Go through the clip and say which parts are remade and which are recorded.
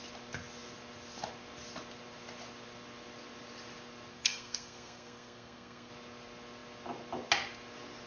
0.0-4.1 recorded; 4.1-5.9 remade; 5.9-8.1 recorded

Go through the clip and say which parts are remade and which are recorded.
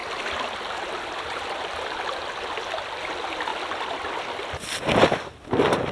0.0-5.9 recorded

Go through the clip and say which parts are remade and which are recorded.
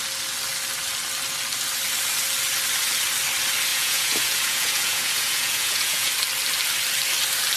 0.0-3.7 recorded; 3.7-6.1 remade; 6.1-7.6 recorded